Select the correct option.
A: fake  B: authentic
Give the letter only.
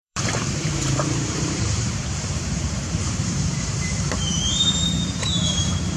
A